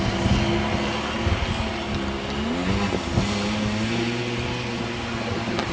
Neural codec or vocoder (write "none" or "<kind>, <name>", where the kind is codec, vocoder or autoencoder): none